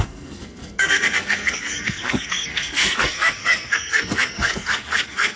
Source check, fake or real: fake